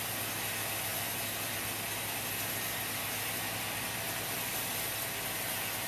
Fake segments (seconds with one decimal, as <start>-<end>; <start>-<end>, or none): none